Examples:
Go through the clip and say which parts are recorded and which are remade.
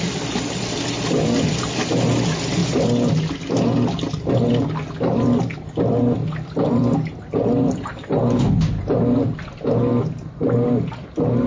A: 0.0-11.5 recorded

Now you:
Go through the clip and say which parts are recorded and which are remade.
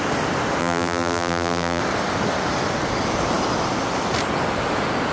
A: 0.0-0.6 recorded; 0.6-1.8 remade; 1.8-5.1 recorded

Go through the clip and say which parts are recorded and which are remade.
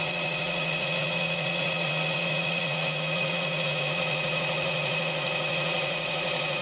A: 0.0-6.6 remade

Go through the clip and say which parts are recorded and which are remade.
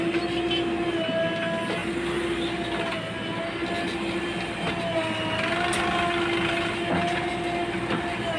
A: 0.0-8.4 recorded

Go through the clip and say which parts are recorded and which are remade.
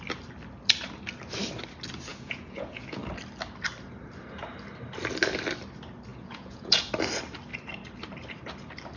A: 0.0-2.1 recorded; 2.1-3.0 remade; 3.0-6.1 recorded; 6.1-6.9 remade; 6.9-9.0 recorded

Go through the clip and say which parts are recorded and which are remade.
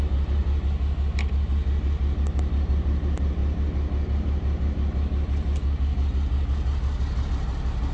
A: 0.0-0.4 remade; 0.4-2.7 recorded; 2.7-3.4 remade; 3.4-7.3 recorded; 7.3-7.9 remade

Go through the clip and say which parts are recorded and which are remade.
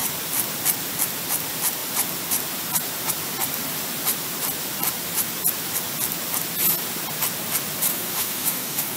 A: 0.0-7.9 recorded; 7.9-9.0 remade